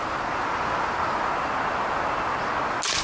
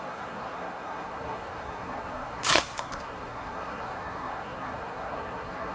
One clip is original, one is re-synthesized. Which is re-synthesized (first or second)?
second